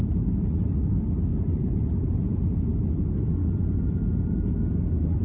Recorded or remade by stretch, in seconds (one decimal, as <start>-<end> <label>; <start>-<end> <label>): 0.0-5.2 recorded